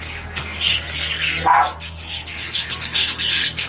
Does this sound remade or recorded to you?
remade